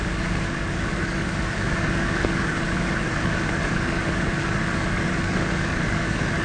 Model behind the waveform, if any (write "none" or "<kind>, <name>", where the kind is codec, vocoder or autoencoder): codec, DAC